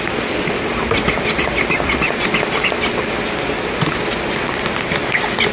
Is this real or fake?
real